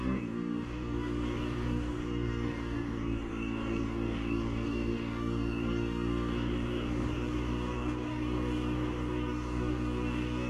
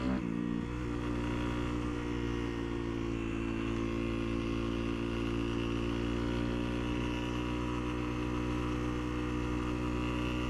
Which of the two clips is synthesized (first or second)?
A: first